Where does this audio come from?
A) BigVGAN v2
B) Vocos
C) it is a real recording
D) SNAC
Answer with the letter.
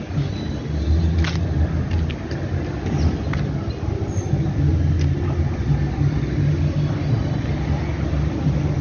C